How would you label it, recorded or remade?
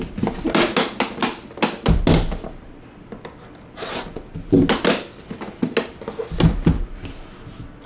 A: recorded